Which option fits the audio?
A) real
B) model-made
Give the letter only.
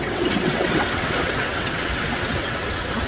B